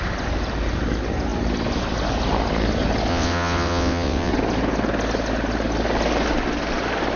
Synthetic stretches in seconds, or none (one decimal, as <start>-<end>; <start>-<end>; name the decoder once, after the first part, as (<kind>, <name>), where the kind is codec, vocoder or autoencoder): 3.1-4.3 (vocoder, WaveNeXt)